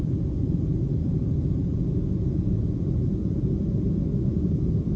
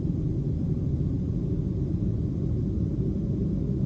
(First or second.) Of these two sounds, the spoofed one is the first